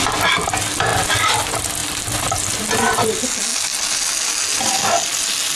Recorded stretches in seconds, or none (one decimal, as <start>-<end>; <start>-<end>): 0.0-0.9; 1.4-5.6